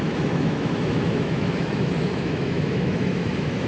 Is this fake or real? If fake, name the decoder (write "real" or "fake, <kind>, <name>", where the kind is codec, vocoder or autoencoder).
fake, autoencoder, DAC-VAE